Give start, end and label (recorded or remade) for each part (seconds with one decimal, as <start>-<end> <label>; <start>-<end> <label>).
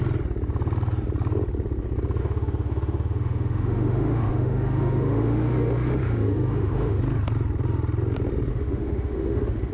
0.0-2.2 recorded; 2.2-7.0 remade; 7.0-8.5 recorded; 8.5-9.7 remade